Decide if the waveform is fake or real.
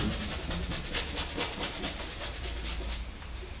real